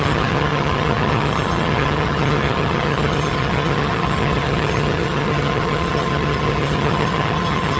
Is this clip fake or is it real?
fake